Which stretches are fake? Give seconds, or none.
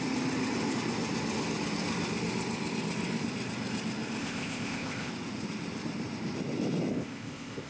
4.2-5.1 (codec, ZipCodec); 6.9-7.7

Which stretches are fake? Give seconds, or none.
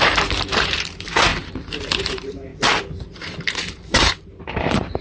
0.0-2.5 (vocoder, BigVGAN v2); 3.0-5.0